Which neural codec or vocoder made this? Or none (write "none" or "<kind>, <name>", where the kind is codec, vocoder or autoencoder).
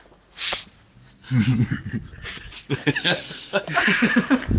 none